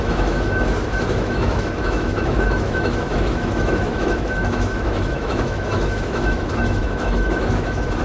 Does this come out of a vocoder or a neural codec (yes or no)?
yes